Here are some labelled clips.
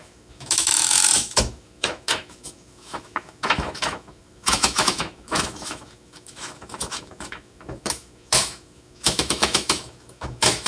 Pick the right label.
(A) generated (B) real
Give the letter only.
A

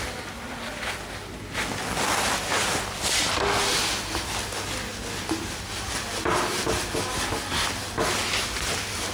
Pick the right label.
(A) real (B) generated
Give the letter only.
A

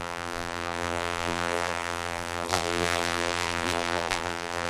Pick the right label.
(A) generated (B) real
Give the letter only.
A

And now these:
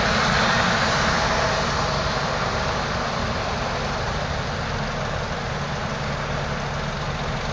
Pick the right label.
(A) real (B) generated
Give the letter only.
A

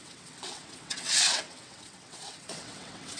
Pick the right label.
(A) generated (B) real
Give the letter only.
A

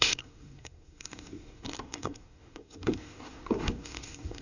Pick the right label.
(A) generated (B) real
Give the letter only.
A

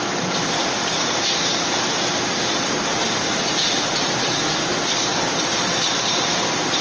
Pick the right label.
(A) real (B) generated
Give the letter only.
B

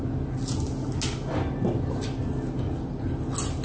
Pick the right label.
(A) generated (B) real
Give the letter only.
B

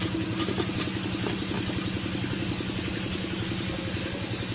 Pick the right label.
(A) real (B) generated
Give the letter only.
A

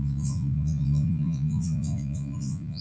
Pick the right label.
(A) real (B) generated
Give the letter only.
B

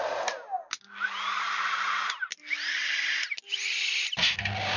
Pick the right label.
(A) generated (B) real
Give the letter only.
B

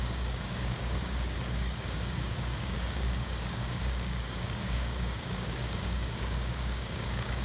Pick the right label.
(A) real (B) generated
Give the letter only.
B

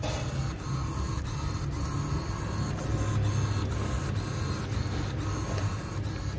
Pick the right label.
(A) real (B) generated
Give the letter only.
A